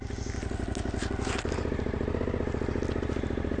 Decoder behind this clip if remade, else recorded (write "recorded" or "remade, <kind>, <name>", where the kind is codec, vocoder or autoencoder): recorded